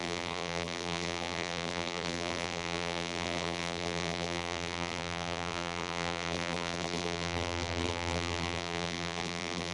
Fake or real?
fake